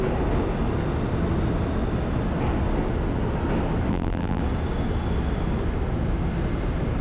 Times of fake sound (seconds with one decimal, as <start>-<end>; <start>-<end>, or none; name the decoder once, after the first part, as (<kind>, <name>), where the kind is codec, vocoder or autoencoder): 3.9-4.4 (vocoder, BigVGAN v2)